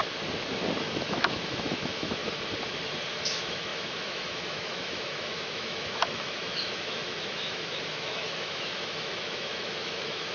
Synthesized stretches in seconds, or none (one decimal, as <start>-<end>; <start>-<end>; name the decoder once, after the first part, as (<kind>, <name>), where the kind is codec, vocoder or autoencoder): 0.8-2.2 (autoencoder, DAC-VAE); 3.1-10.3